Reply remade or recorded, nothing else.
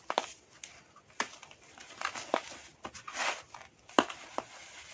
recorded